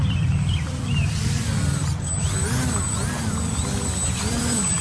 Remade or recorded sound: remade